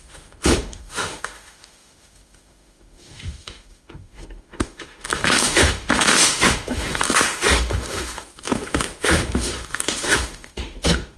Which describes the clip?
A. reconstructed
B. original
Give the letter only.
A